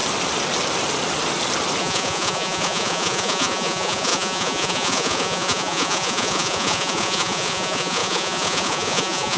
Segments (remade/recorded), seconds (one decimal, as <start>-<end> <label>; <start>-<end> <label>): 0.0-1.8 recorded; 1.8-9.4 remade